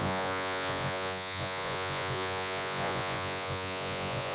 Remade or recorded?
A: remade